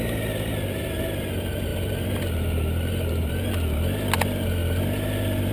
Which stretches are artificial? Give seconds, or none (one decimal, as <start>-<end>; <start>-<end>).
1.7-3.5